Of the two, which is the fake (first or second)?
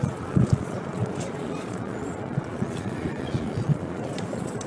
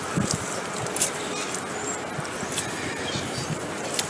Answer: first